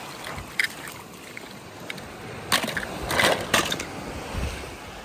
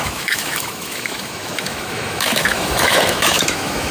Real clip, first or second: first